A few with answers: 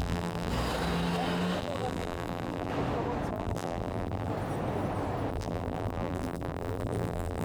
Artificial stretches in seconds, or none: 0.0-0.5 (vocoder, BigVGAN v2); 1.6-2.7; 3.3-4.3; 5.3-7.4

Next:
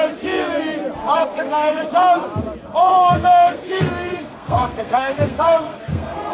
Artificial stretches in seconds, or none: 1.0-1.8 (codec, SNAC); 2.8-6.3

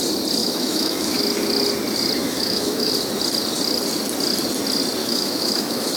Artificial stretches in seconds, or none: 0.4-1.2 (autoencoder, DAC-VAE); 2.2-2.9; 5.0-6.0